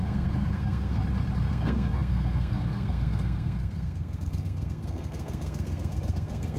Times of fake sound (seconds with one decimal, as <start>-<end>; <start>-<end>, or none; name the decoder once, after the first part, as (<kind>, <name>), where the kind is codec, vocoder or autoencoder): 0.0-1.0 (codec, SNAC); 1.5-6.6